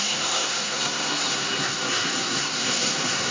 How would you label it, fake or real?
fake